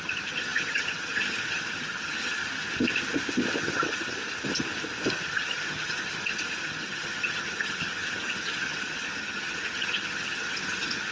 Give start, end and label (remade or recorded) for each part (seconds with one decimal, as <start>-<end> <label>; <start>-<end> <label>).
0.0-2.4 remade; 2.4-3.6 recorded; 3.6-4.2 remade; 4.2-5.1 recorded; 5.1-11.1 remade